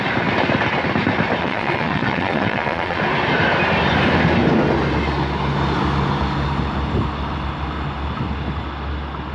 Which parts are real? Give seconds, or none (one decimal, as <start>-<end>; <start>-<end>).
0.0-1.4; 3.0-9.3